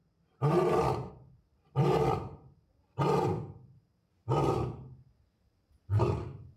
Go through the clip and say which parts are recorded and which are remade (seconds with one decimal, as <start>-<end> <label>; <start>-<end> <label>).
0.0-1.1 remade; 1.1-1.5 recorded; 1.5-2.2 remade; 2.2-6.6 recorded